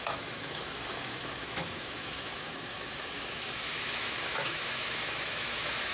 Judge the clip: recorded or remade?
remade